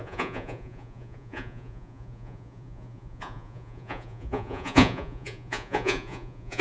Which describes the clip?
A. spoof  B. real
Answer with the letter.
A